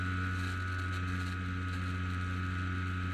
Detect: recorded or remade recorded